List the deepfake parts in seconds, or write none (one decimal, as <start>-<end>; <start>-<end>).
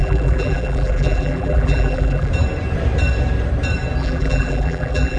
0.0-2.3; 4.0-5.2